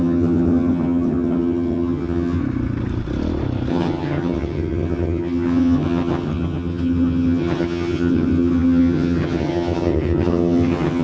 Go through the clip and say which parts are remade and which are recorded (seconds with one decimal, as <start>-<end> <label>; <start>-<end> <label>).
0.0-2.4 remade; 2.4-3.7 recorded; 3.7-11.0 remade